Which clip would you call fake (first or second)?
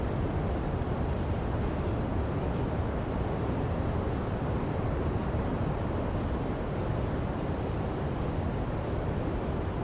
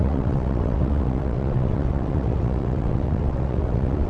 second